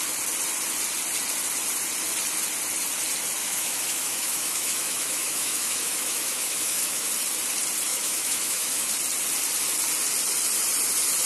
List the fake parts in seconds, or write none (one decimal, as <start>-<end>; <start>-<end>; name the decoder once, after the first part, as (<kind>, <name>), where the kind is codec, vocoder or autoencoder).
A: 3.4-7.1 (autoencoder, DAC-VAE); 7.9-8.9